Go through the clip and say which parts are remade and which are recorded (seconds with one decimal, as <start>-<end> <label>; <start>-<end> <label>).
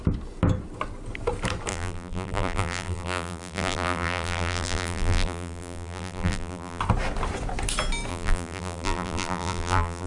0.0-1.7 recorded; 1.7-6.8 remade; 6.8-8.1 recorded; 8.1-10.1 remade